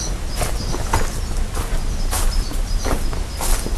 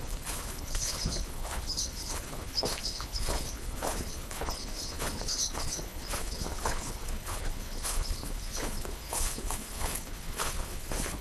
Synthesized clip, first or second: second